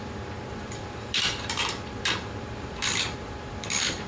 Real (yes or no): no